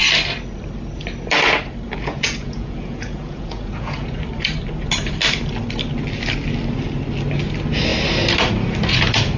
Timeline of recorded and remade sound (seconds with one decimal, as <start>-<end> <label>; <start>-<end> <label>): 0.0-2.0 recorded; 2.0-4.2 remade; 4.2-9.4 recorded